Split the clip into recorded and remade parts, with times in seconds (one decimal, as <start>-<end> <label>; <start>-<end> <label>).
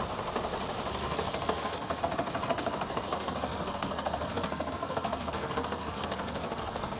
0.0-1.0 recorded; 1.0-2.0 remade; 2.0-2.5 recorded; 2.5-7.0 remade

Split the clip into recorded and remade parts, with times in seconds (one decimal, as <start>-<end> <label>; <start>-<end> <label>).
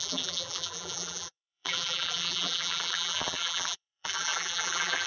0.0-5.1 remade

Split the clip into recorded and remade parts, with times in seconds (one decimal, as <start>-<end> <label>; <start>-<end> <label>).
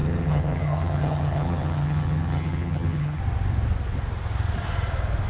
0.0-3.2 remade; 3.2-5.3 recorded